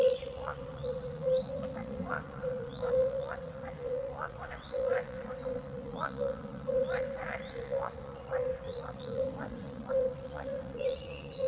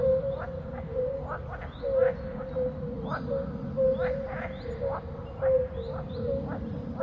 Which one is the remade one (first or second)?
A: first